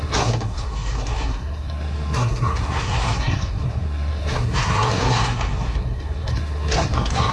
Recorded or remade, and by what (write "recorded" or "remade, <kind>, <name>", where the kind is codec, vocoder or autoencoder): remade, codec, SNAC